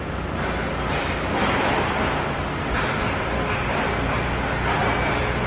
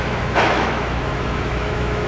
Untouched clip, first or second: first